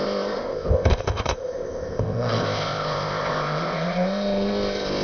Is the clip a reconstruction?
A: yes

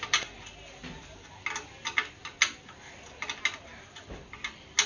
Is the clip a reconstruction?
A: no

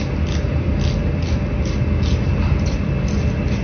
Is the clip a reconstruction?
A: no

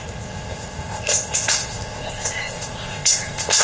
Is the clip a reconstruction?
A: yes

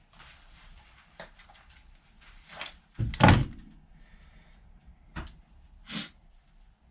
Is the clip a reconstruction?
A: no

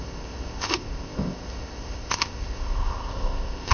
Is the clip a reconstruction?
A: yes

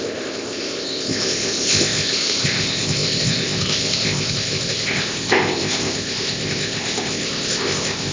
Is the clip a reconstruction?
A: yes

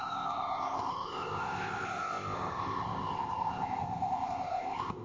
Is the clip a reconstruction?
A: yes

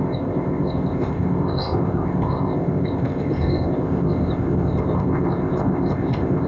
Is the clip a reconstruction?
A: yes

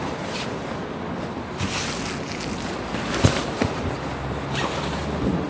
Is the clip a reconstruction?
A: no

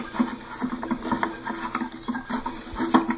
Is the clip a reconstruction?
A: no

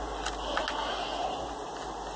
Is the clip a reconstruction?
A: no